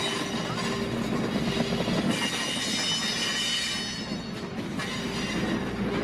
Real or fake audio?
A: real